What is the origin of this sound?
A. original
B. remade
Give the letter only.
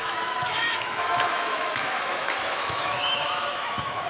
B